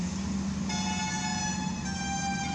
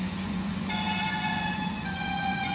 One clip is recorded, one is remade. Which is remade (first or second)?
second